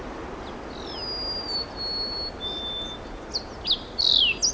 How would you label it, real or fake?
real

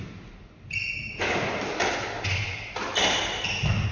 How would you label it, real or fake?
real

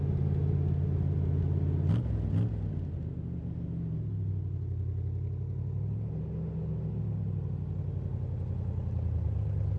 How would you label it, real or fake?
real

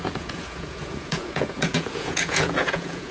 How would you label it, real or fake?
fake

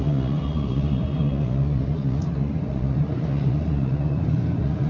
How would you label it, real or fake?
fake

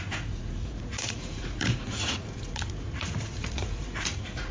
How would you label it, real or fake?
fake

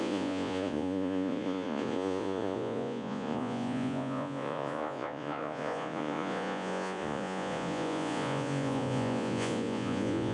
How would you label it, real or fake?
fake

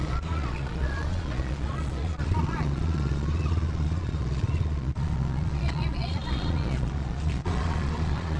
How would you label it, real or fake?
fake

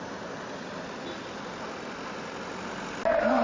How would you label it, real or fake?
real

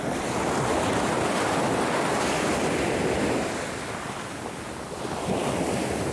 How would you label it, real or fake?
real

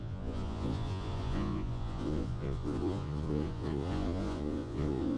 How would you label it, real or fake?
fake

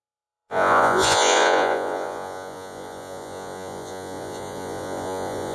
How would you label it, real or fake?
fake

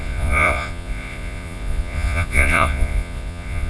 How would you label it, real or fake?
fake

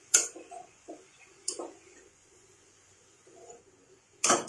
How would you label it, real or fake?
fake